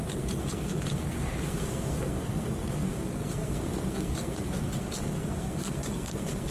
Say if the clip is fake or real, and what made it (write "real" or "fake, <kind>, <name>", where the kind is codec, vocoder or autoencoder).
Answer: fake, codec, SNAC